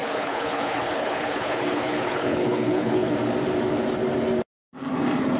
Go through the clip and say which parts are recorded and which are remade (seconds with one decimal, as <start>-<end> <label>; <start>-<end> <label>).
0.0-3.1 remade; 3.1-5.4 recorded